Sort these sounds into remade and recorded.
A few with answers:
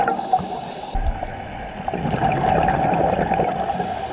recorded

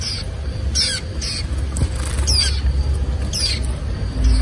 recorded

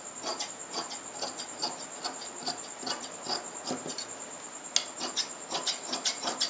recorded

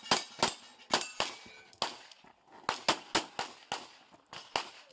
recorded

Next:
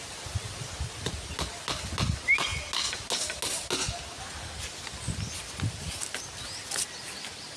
recorded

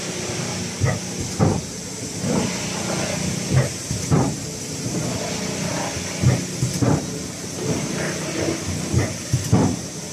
recorded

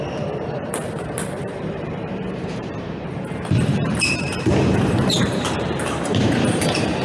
remade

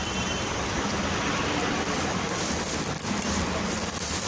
recorded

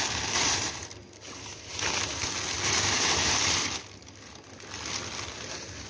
recorded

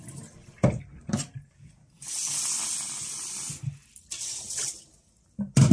recorded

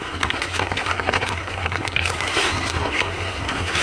remade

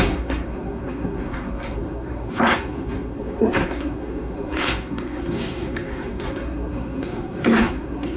remade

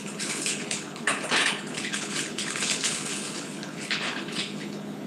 remade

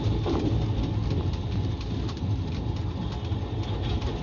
recorded